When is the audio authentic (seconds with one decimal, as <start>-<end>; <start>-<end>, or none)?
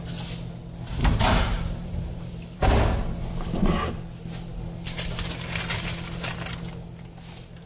0.0-1.0; 2.6-7.7